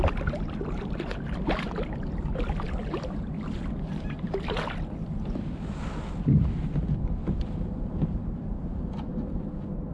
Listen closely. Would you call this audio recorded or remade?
recorded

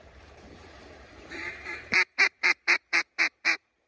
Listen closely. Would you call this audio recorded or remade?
remade